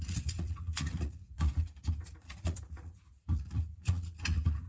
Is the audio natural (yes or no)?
no